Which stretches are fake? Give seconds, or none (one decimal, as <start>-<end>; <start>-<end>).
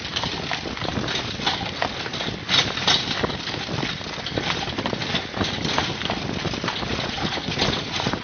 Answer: 6.9-8.2